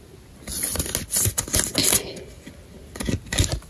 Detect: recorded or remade recorded